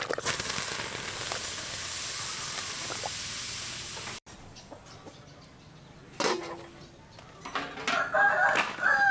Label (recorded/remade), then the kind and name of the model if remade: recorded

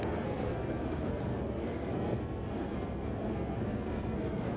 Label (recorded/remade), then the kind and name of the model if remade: remade, codec, SNAC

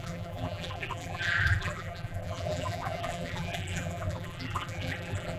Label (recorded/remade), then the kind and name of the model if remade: remade, vocoder, BigVGAN v2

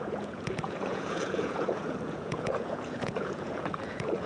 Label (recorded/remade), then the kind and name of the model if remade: remade, vocoder, Vocos